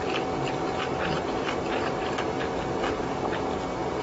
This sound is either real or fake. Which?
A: real